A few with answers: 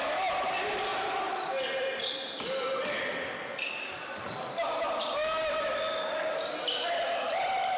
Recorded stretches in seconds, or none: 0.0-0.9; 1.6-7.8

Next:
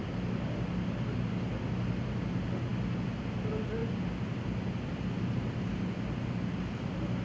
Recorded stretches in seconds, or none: 0.0-7.2

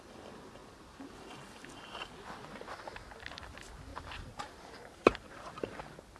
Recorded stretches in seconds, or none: 0.0-3.9; 5.8-6.2

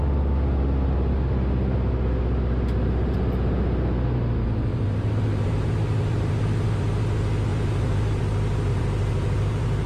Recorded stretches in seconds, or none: 0.0-4.7; 6.8-7.5; 8.2-8.7

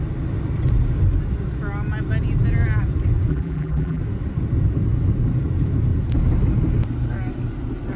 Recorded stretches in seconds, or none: 0.0-3.3; 4.0-8.0

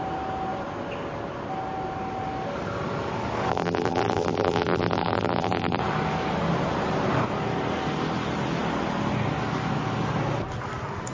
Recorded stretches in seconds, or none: 0.0-3.5; 5.8-11.1